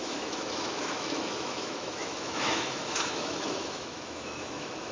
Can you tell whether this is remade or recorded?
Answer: remade